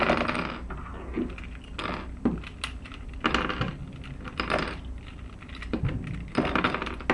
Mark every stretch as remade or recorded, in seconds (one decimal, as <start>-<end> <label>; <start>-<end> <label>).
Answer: 0.0-3.8 recorded; 3.8-5.4 remade; 5.4-7.1 recorded